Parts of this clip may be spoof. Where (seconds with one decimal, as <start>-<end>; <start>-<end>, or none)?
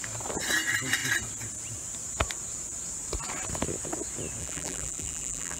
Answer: 4.4-5.6